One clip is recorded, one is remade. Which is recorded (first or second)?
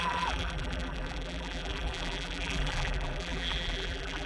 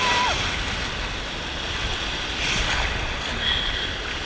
second